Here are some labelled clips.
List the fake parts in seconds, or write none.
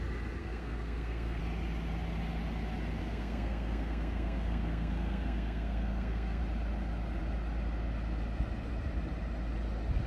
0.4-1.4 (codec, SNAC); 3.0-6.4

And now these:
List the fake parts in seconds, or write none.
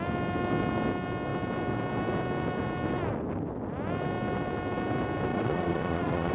5.3-6.3 (vocoder, Vocos)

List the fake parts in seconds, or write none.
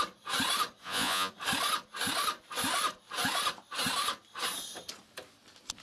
0.8-1.3 (vocoder, Vocos)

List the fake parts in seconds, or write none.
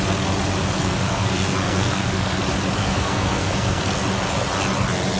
0.8-2.4 (codec, SNAC); 2.8-3.8